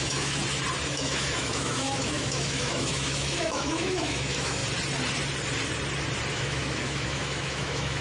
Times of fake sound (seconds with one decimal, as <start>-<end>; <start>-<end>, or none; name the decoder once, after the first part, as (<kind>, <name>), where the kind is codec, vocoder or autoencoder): 0.0-0.4 (autoencoder, DAC-VAE); 0.9-4.6; 6.3-8.0